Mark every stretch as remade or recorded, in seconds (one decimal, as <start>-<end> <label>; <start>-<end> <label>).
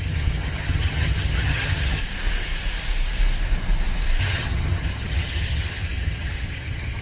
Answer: 0.0-2.0 remade; 2.0-4.2 recorded; 4.2-7.0 remade